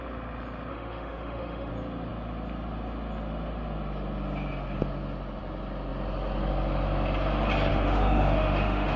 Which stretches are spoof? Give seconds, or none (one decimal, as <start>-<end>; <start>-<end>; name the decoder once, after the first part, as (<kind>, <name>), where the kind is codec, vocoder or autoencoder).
0.7-1.7 (autoencoder, DAC-VAE); 7.7-9.0